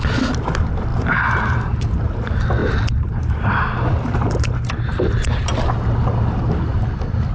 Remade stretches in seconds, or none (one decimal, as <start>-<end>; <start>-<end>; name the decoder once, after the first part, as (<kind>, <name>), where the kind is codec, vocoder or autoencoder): 0.9-1.8 (vocoder, BigVGAN v2); 2.6-5.5